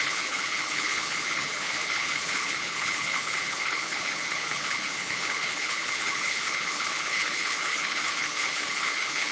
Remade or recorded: remade